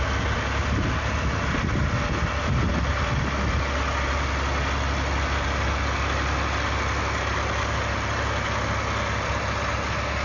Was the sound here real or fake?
real